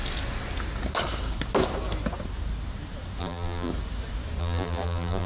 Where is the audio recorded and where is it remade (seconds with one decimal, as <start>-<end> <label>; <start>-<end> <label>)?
0.0-3.2 recorded; 3.2-3.7 remade; 3.7-4.4 recorded; 4.4-5.3 remade